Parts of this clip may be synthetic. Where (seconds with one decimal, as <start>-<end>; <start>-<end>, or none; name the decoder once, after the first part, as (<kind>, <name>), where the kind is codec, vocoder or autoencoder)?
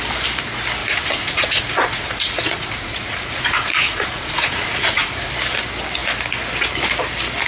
0.8-5.3 (vocoder, Vocos)